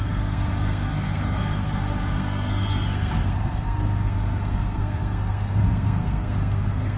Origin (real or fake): fake